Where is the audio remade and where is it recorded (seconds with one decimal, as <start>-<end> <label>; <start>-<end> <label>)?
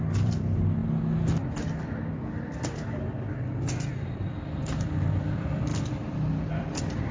0.0-0.8 remade; 0.8-3.9 recorded; 3.9-5.7 remade; 5.7-6.5 recorded; 6.5-7.1 remade